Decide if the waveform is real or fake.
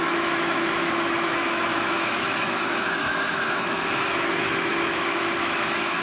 fake